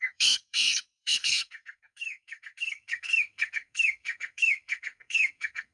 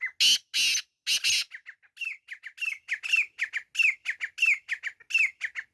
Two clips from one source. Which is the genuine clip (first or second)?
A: second